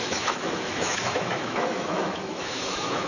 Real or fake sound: fake